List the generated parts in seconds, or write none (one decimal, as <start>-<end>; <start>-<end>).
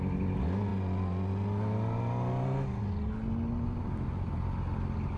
none